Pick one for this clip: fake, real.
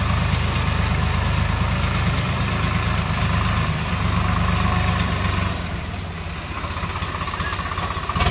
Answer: real